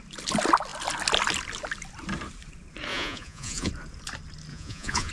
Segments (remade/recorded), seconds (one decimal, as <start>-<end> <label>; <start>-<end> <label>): 0.0-2.9 recorded; 2.9-3.7 remade; 3.7-4.5 recorded; 4.5-5.1 remade